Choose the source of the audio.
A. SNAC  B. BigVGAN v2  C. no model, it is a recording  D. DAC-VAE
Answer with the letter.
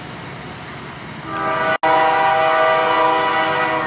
C